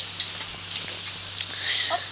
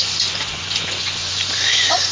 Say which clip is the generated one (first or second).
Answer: second